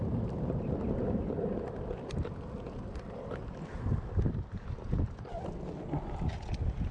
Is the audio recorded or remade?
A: recorded